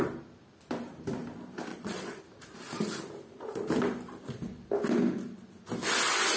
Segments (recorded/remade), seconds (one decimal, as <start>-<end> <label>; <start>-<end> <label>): 0.0-1.7 recorded; 1.7-2.2 remade; 2.2-6.4 recorded